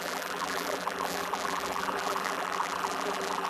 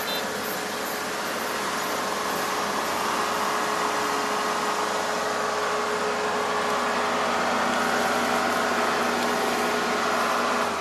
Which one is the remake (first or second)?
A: first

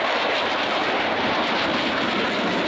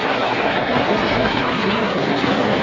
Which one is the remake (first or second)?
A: second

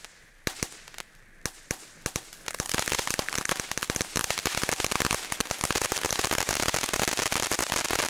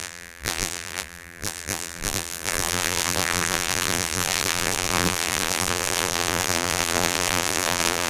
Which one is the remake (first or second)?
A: second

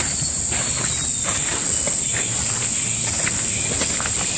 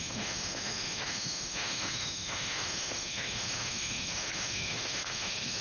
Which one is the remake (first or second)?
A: second